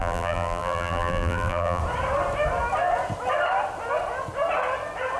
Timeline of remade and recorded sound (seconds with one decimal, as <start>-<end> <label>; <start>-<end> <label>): 0.0-1.8 remade; 1.8-5.2 recorded